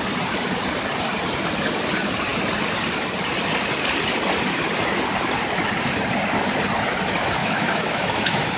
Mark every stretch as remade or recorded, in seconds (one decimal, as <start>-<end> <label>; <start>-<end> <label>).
0.0-7.4 recorded; 7.4-8.6 remade